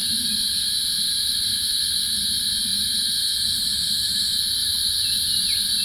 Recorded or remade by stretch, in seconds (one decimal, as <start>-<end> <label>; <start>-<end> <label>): 0.0-1.3 remade; 1.3-2.7 recorded; 2.7-4.4 remade; 4.4-5.8 recorded